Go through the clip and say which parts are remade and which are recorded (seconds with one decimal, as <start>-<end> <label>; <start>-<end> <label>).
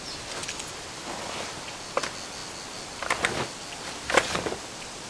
0.0-5.1 recorded